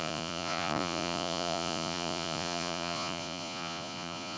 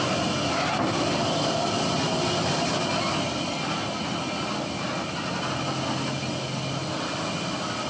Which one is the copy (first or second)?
first